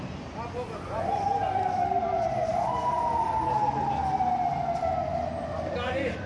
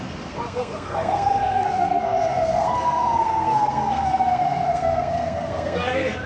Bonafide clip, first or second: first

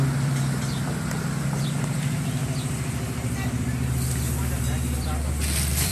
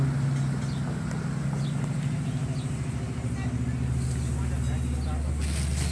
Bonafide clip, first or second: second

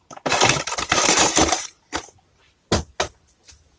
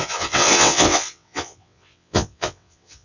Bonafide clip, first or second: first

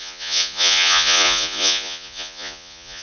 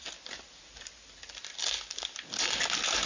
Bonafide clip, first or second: second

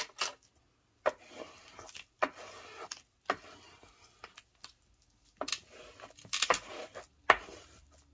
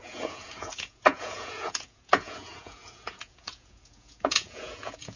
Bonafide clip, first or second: first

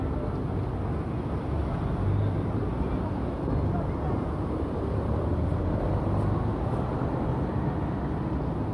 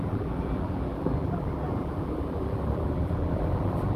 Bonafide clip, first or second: first